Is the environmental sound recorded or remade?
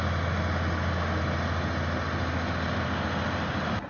recorded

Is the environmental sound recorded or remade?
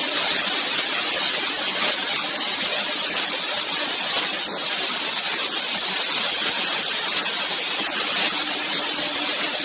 recorded